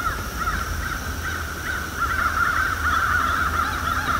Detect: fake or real fake